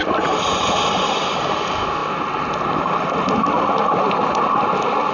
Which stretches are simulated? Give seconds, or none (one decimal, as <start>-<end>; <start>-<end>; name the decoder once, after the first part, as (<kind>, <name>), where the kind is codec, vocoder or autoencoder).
none